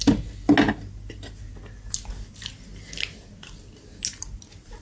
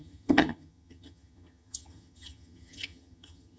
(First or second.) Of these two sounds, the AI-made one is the second